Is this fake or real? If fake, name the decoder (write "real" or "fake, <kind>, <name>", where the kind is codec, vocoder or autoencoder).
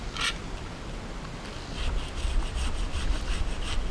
real